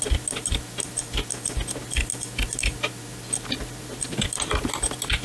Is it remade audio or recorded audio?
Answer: recorded